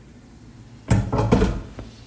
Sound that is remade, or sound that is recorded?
recorded